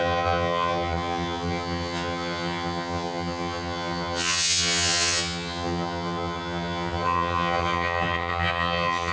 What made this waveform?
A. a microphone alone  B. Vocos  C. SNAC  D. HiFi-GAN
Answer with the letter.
D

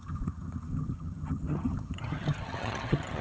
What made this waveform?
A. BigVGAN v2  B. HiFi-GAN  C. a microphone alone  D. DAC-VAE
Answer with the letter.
B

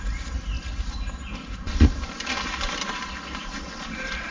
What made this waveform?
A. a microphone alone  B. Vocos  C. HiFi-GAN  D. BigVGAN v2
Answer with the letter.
A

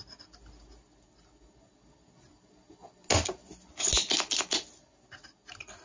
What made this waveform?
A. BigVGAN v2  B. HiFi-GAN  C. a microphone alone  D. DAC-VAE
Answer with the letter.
C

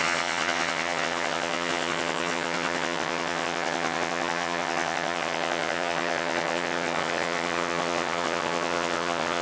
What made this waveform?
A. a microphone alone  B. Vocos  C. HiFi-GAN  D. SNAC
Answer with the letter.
C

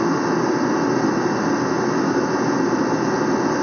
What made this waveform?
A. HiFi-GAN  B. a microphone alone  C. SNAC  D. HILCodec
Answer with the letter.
B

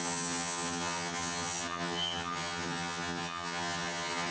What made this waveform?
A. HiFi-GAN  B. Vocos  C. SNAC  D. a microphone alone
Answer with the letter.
A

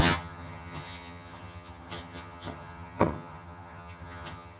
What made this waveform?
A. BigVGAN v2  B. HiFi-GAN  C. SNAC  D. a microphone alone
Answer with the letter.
B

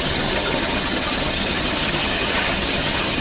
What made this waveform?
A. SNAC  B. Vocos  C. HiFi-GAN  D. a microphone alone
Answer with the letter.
C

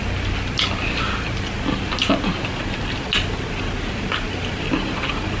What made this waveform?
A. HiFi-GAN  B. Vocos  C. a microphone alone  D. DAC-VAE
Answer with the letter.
C